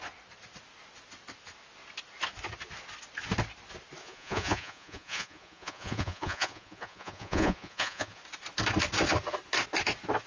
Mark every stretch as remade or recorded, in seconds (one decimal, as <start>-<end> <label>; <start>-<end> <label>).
0.0-4.0 recorded; 4.0-8.2 remade; 8.2-10.3 recorded

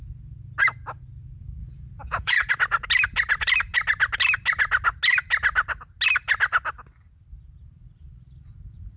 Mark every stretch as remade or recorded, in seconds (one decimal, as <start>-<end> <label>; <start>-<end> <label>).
0.0-1.6 recorded; 1.6-2.5 remade; 2.5-9.0 recorded

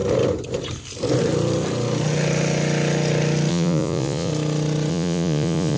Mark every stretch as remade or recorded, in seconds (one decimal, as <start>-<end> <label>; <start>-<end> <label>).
0.0-3.5 recorded; 3.5-4.3 remade; 4.3-4.9 recorded; 4.9-5.8 remade